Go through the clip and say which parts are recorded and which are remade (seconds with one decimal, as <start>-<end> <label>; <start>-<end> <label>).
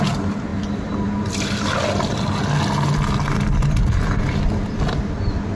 0.0-5.6 recorded